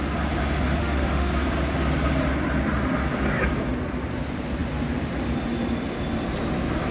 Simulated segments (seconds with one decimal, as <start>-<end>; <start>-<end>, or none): 0.8-1.3